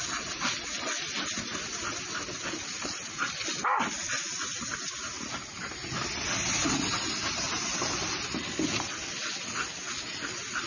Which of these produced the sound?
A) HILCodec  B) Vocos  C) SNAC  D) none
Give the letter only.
D